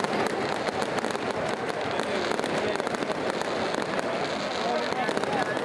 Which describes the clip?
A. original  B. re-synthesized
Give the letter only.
A